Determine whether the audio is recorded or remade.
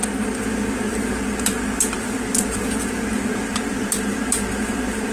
recorded